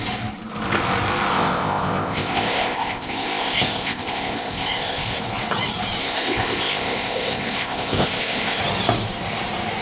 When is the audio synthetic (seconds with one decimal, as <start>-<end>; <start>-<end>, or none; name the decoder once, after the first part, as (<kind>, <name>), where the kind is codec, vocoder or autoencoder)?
1.3-5.2 (codec, ZipCodec); 6.0-8.6